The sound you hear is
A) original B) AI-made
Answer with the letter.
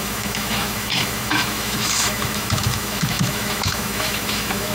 B